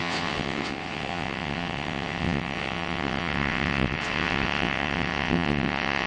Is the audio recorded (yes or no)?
no